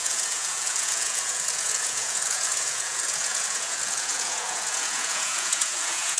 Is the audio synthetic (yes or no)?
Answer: yes